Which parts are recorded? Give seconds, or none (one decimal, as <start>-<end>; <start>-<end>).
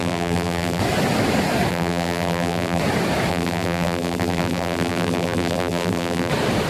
0.8-1.7; 2.8-3.3; 6.3-6.7